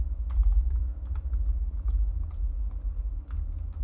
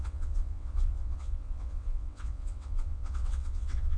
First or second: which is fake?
second